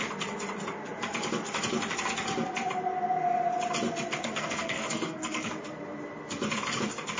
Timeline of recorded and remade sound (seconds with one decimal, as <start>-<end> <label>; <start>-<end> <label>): 0.0-4.2 recorded; 4.2-5.5 remade; 5.5-7.2 recorded